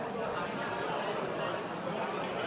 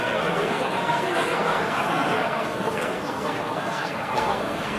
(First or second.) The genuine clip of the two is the first